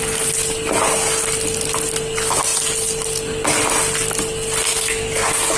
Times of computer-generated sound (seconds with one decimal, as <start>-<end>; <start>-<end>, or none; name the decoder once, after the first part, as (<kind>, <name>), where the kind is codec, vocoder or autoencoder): 4.7-5.6 (codec, DAC)